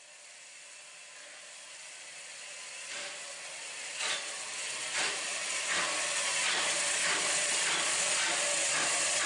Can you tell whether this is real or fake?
real